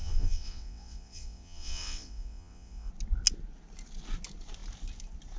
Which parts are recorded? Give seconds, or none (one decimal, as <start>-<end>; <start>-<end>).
2.9-5.4

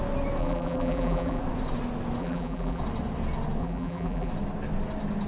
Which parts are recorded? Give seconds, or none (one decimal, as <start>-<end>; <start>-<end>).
0.0-0.4; 1.4-2.2; 2.8-3.6; 4.3-5.3

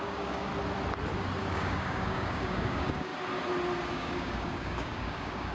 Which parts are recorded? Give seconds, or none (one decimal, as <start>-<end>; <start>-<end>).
0.5-1.4; 3.1-3.9

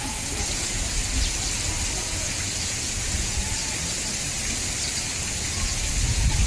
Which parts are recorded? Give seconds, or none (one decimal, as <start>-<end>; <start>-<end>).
1.0-2.0; 3.6-5.3

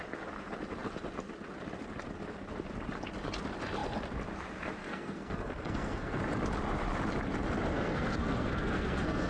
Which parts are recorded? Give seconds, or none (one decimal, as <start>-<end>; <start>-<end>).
0.0-4.8; 6.2-7.7